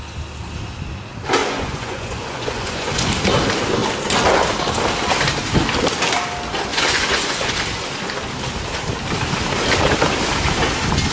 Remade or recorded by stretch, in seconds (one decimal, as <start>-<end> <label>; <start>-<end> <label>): 0.0-1.4 recorded; 1.4-3.1 remade; 3.1-6.7 recorded; 6.7-7.5 remade; 7.5-11.1 recorded